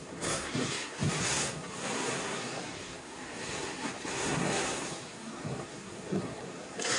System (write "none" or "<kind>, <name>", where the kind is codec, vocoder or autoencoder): codec, SNAC